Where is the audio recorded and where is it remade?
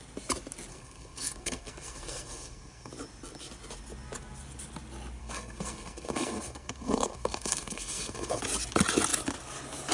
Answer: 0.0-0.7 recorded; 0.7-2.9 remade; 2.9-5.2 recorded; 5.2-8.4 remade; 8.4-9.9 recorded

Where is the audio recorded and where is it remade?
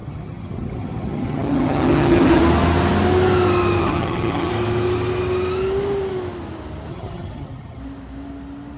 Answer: 0.0-2.4 remade; 2.4-3.8 recorded; 3.8-4.5 remade; 4.5-6.9 recorded; 6.9-7.8 remade; 7.8-8.8 recorded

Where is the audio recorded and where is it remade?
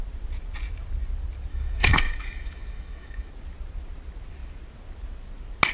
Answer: 0.0-1.5 recorded; 1.5-3.3 remade; 3.3-5.7 recorded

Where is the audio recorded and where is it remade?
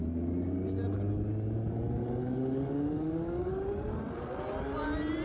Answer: 0.0-2.0 recorded; 2.0-3.5 remade; 3.5-5.2 recorded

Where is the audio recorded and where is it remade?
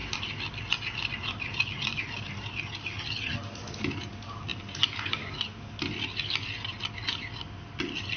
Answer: 0.0-8.2 recorded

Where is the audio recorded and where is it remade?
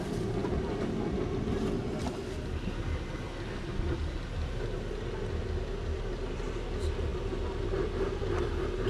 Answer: 0.0-8.9 recorded